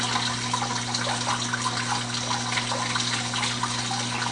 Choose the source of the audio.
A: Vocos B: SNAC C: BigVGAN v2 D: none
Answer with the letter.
D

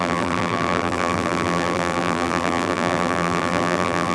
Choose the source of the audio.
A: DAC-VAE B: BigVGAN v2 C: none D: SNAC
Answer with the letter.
B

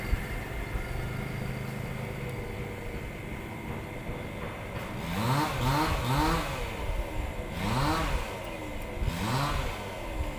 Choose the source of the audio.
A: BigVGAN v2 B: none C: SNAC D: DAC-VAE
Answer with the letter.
B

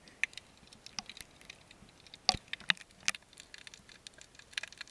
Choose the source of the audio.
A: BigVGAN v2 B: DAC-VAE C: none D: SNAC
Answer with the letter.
C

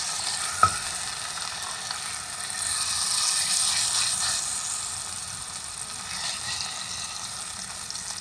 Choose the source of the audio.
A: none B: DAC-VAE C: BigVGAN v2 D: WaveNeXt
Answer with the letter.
A